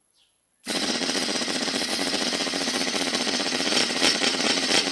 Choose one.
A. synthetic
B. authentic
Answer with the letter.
A